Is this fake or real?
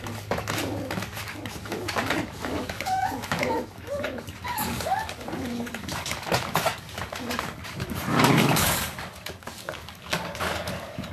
fake